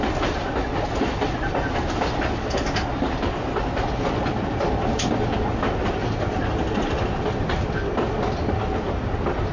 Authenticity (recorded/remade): recorded